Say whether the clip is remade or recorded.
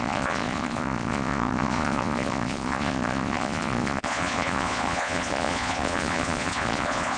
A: remade